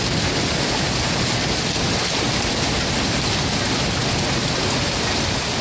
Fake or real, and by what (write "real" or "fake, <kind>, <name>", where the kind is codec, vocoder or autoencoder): real